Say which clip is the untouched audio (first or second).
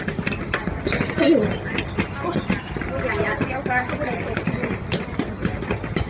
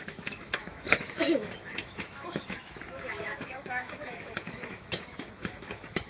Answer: first